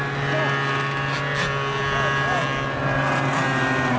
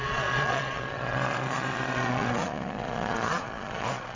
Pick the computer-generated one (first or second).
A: second